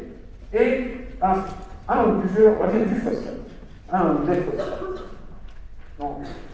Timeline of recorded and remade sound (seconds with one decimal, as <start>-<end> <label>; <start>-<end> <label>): 0.0-2.4 recorded; 2.4-3.5 remade; 3.5-6.5 recorded